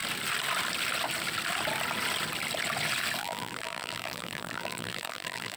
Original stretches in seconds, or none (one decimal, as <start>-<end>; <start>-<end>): 0.0-3.2